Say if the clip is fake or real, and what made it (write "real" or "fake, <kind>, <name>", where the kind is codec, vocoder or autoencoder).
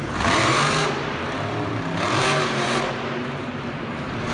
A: fake, vocoder, BigVGAN v2